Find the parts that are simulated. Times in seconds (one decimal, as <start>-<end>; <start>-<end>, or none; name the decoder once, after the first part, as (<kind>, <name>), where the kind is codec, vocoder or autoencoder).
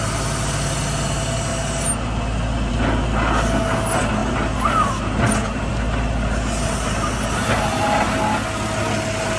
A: none